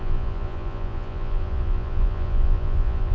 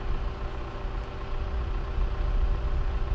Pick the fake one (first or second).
first